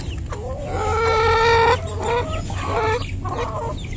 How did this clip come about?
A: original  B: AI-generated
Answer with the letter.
A